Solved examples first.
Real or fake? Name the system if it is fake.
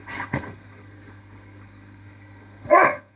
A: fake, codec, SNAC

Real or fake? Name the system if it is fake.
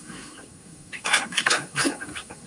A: fake, codec, SNAC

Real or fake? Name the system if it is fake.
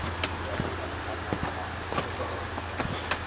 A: real